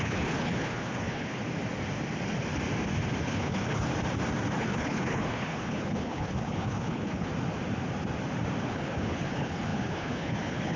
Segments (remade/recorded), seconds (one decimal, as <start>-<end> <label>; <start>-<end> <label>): 0.0-1.4 remade; 1.4-3.2 recorded; 3.2-3.9 remade; 3.9-4.6 recorded; 4.6-7.3 remade; 7.3-8.6 recorded; 8.6-10.8 remade